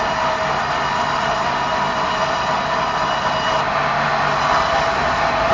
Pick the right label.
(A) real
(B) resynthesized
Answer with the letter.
A